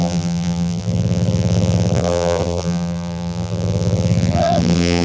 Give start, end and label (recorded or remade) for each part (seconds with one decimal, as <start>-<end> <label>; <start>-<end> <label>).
0.0-5.0 remade